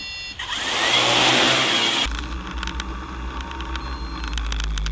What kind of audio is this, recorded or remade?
recorded